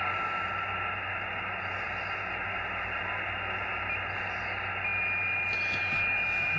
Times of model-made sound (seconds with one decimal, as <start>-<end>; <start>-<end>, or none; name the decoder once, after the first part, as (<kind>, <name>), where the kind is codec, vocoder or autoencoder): none